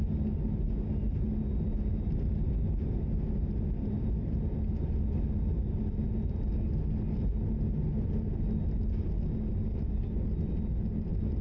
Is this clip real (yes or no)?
yes